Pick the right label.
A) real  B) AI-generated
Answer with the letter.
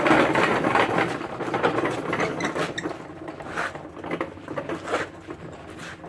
A